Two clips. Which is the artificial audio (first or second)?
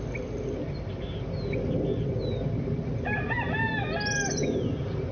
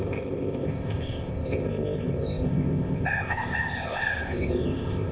second